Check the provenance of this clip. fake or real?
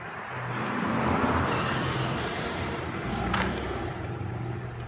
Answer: fake